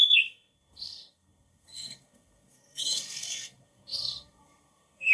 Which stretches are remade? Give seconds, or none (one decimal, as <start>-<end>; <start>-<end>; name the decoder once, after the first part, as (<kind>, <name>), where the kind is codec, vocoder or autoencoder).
0.0-5.1 (codec, SNAC)